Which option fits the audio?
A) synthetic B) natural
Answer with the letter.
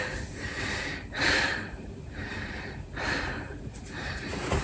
A